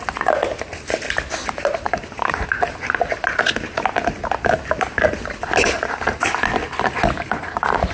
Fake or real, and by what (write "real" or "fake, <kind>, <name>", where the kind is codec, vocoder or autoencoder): real